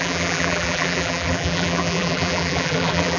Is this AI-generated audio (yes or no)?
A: yes